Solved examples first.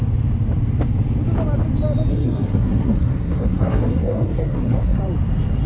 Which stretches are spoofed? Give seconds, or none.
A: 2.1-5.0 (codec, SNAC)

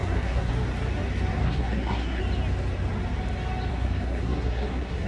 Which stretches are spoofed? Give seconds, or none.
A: 0.0-0.5 (codec, SNAC); 1.4-2.2; 3.7-5.1

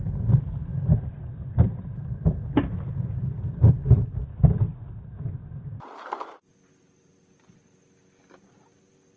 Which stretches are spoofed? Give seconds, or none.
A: none

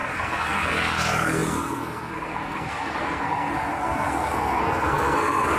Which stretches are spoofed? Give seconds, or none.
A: 0.0-5.6 (codec, SNAC)